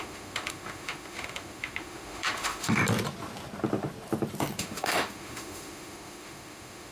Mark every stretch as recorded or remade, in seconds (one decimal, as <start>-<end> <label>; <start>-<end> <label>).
0.0-2.8 remade; 2.8-4.6 recorded; 4.6-6.9 remade